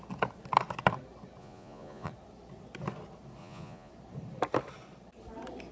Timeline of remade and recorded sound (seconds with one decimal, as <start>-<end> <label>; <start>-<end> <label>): 0.0-1.4 recorded; 1.4-2.1 remade; 2.1-3.4 recorded; 3.4-3.9 remade; 3.9-5.7 recorded